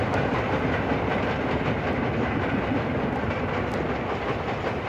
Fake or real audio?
real